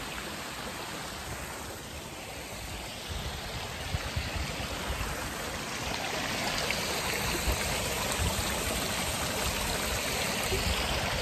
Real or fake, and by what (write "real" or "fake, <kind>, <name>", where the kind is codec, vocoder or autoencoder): real